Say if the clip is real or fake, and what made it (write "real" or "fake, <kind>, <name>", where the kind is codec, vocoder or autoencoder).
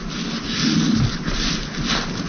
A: real